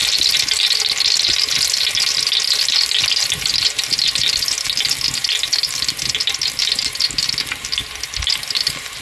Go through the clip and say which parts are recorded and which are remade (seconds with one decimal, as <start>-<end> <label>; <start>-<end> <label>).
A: 0.0-9.0 recorded